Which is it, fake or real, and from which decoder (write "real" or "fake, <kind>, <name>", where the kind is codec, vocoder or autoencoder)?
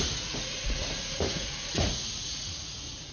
fake, vocoder, Vocos